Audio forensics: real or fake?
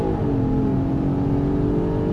real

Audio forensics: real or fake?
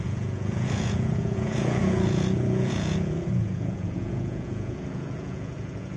fake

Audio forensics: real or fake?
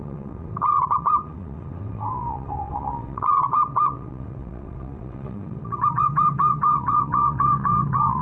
fake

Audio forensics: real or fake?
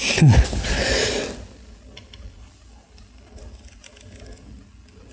real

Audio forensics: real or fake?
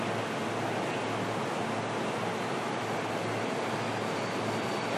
real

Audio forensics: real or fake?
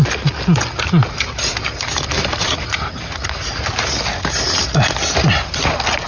real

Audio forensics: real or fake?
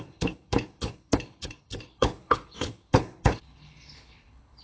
fake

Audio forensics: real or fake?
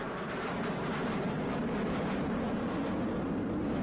fake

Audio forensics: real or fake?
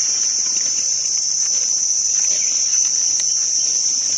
real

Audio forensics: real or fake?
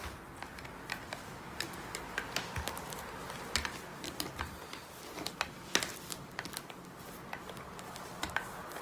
real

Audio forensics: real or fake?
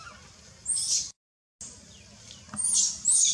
real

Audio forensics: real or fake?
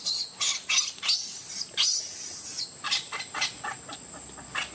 real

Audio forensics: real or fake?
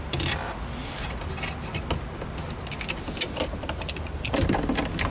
real